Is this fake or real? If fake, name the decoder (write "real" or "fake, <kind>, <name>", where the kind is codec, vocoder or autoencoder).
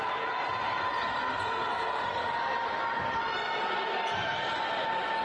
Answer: real